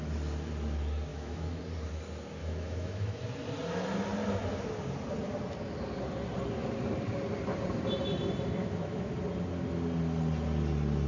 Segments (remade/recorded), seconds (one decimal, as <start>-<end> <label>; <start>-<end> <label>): 0.0-1.1 recorded; 1.1-1.6 remade; 1.6-2.4 recorded; 2.4-3.2 remade; 3.2-8.6 recorded; 8.6-9.1 remade; 9.1-11.1 recorded